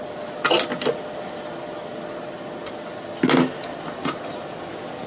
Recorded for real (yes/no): yes